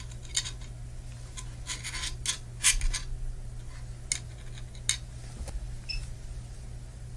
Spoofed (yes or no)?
no